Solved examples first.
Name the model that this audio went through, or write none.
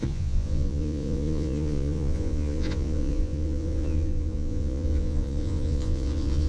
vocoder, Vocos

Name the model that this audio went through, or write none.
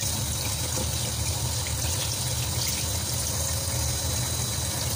none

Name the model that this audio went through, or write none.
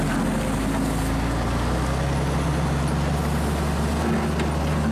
none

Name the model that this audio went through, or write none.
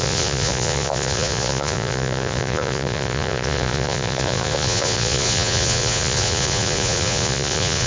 vocoder, Vocos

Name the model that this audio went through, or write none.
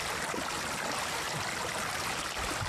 none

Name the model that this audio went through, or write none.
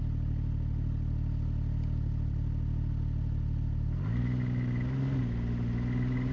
none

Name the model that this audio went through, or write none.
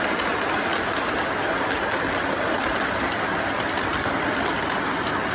none